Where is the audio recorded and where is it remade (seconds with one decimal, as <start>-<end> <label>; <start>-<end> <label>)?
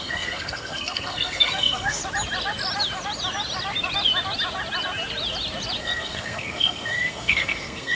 0.0-2.0 remade; 2.0-5.8 recorded; 5.8-7.9 remade